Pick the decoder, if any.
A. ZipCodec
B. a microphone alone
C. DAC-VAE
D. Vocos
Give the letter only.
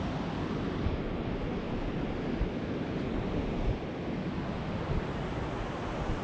B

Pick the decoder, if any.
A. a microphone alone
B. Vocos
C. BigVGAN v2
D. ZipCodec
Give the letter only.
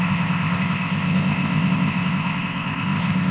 D